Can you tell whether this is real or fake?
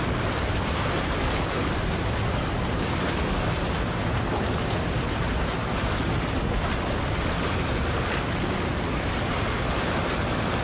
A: real